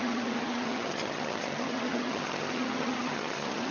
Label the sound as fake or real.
fake